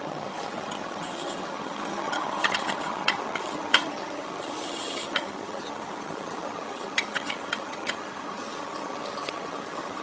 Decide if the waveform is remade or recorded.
remade